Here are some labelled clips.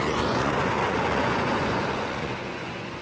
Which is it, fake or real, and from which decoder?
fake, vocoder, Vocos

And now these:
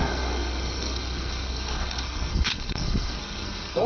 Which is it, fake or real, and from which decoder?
fake, codec, SNAC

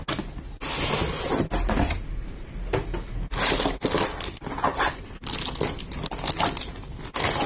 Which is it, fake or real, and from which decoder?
real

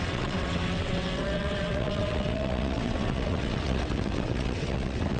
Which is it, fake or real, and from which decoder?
fake, vocoder, WaveNeXt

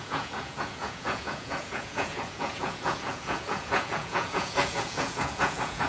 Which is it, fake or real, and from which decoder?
fake, vocoder, Vocos